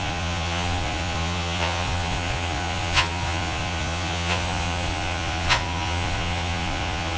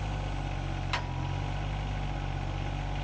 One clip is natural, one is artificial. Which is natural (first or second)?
second